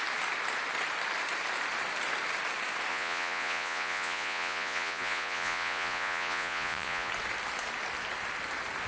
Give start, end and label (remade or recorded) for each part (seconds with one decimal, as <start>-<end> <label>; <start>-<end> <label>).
0.0-2.9 recorded; 2.9-7.1 remade; 7.1-8.9 recorded